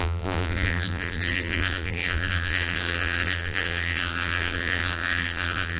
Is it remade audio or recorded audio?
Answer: remade